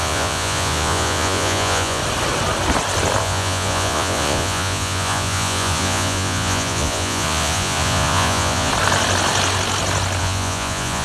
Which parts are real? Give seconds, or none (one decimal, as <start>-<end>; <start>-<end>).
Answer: 2.0-3.2; 8.7-10.2